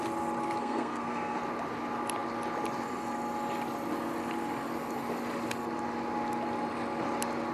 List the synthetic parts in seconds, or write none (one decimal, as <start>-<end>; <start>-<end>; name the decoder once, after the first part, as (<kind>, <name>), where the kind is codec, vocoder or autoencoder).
0.6-1.4 (codec, SNAC)